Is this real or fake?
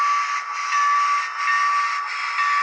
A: real